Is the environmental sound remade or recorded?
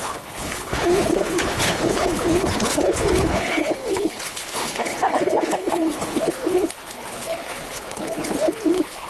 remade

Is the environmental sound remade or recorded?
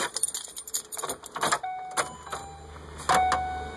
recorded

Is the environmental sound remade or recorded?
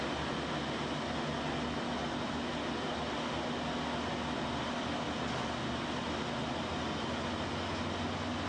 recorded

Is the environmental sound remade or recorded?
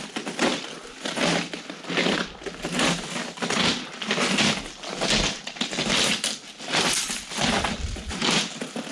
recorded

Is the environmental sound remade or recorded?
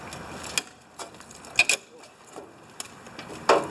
recorded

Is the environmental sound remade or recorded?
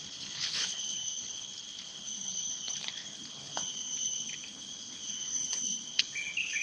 remade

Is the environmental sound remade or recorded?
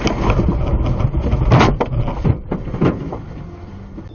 recorded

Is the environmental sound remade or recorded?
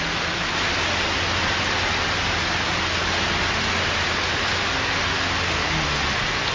recorded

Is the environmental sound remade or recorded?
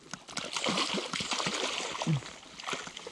recorded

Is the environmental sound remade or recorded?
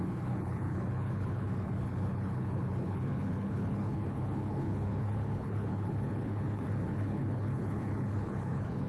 remade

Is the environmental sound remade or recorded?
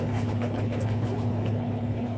remade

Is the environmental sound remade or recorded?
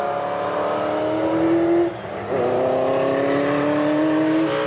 recorded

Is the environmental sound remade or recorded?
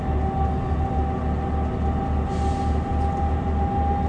recorded